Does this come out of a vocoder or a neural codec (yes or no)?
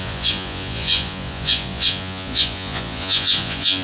yes